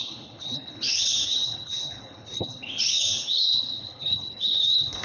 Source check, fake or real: fake